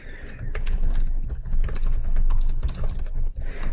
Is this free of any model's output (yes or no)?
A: yes